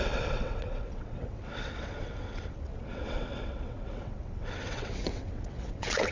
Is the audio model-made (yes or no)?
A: yes